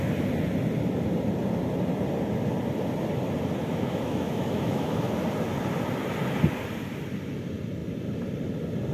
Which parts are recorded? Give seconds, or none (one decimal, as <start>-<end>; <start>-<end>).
0.0-3.6; 5.1-8.9